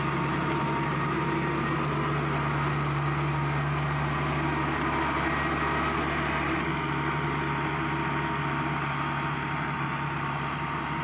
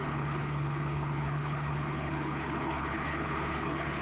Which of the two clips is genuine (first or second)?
first